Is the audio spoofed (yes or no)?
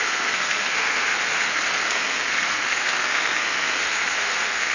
yes